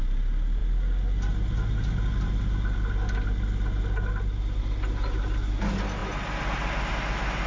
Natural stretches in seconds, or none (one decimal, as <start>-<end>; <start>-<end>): 0.0-7.5